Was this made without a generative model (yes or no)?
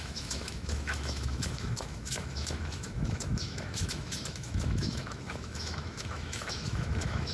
no